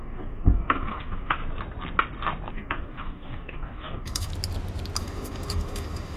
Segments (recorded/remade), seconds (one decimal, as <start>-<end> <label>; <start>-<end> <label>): 0.0-1.4 remade; 1.4-2.5 recorded; 2.5-4.3 remade; 4.3-5.0 recorded; 5.0-6.2 remade